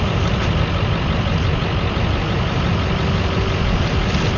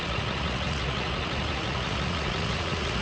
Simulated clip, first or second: second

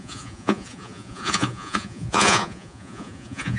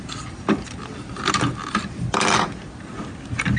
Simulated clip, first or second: first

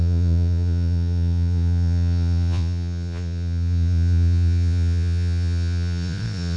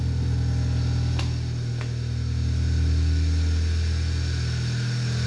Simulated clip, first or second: first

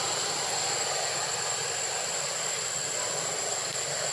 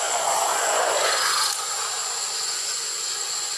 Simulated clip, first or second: second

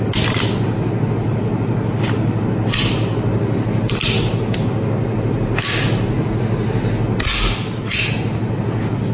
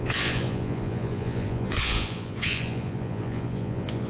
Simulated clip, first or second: second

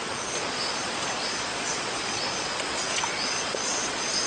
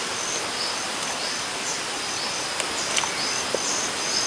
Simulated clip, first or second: first